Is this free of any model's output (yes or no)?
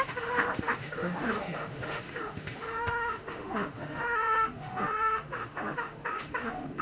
no